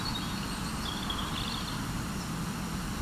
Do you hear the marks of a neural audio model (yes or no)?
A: no